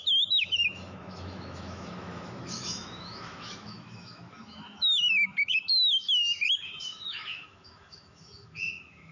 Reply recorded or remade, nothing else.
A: remade